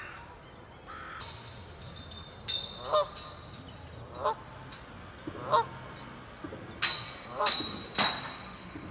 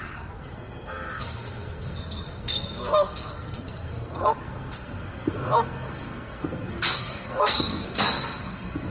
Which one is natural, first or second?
first